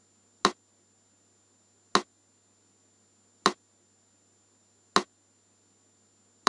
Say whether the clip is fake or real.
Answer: real